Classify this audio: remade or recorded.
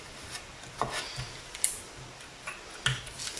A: recorded